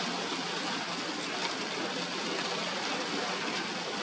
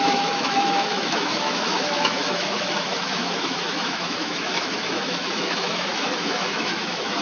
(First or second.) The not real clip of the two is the second